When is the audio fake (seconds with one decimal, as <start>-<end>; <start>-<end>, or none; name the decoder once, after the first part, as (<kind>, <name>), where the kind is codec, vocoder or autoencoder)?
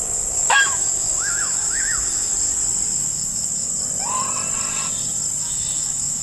0.0-2.3 (autoencoder, DAC-VAE); 3.0-3.7; 5.4-6.2